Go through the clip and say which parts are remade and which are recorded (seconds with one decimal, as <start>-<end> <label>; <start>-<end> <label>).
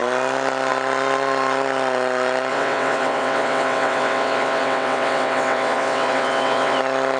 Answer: 0.0-2.5 recorded; 2.5-6.8 remade; 6.8-7.2 recorded